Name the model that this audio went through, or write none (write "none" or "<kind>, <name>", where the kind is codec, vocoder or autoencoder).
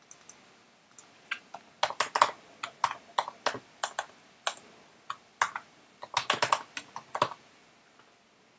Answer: none